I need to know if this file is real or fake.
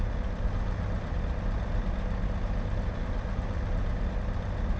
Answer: real